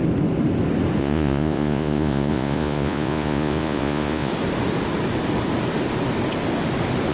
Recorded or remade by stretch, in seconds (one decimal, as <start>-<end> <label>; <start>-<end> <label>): 0.0-1.0 recorded; 1.0-4.3 remade; 4.3-7.1 recorded